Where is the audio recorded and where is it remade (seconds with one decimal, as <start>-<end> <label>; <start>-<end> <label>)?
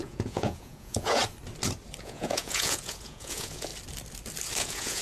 0.0-1.2 remade; 1.2-2.0 recorded; 2.0-3.7 remade; 3.7-4.6 recorded; 4.6-5.0 remade